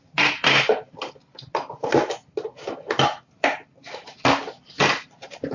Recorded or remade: recorded